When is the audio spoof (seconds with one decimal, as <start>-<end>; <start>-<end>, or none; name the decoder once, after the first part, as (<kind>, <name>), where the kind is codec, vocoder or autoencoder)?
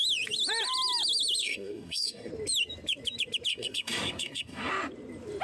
1.4-2.3 (codec, SNAC); 3.5-4.7